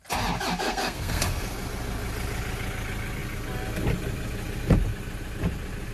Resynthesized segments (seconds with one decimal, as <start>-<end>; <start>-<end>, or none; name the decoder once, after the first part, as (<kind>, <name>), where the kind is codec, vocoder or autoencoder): 0.6-1.2 (codec, SNAC)